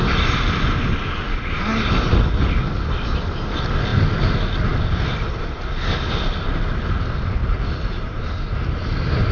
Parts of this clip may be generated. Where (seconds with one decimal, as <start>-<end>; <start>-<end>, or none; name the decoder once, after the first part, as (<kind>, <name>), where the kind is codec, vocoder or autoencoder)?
7.4-8.5 (vocoder, BigVGAN v2)